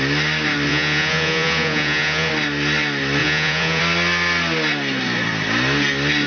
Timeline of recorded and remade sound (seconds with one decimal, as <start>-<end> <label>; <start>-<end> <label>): 0.0-0.7 recorded; 0.7-2.3 remade; 2.3-3.2 recorded; 3.2-3.8 remade; 3.8-6.3 recorded